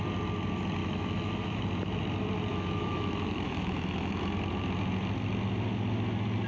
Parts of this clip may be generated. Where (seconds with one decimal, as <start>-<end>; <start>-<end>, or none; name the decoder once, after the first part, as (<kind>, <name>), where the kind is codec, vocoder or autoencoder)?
0.8-1.6 (autoencoder, DAC-VAE); 2.5-4.2